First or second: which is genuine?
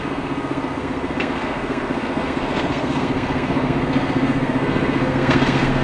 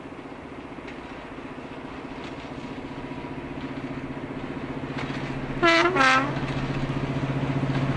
second